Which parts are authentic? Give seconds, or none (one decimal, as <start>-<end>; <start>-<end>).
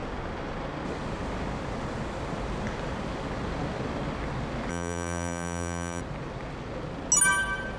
0.0-4.7; 6.0-7.8